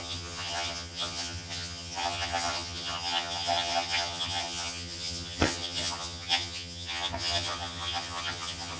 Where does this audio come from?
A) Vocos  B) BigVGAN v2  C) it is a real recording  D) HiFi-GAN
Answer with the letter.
D